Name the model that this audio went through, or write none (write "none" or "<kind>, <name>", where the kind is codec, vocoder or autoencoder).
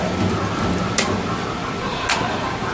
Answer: none